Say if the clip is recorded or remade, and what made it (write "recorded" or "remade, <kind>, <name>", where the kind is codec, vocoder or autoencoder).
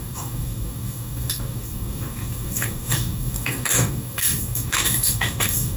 remade, codec, DAC